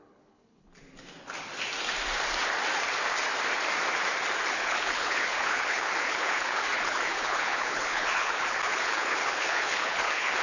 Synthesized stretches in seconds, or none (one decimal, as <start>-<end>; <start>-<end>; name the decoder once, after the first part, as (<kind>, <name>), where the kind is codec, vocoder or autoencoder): 0.0-0.7 (codec, HILCodec); 4.5-10.4